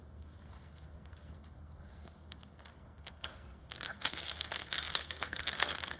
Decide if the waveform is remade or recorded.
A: remade